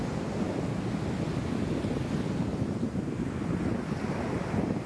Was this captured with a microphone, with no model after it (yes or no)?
yes